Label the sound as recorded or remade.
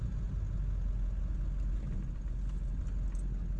recorded